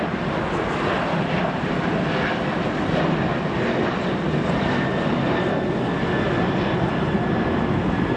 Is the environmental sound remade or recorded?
recorded